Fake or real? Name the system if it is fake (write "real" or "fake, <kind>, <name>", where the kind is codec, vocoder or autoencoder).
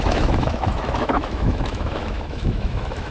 fake, autoencoder, DAC-VAE